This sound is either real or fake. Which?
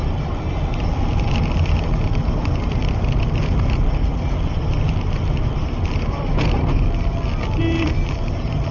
real